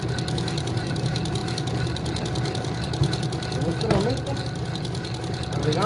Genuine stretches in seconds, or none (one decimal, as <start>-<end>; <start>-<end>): 0.0-5.9